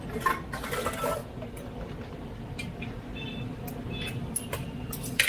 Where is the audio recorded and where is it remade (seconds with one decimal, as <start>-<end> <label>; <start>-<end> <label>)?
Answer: 0.0-5.3 recorded